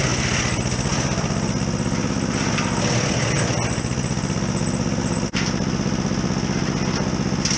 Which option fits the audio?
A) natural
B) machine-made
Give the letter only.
A